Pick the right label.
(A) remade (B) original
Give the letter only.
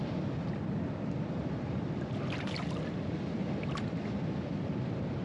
A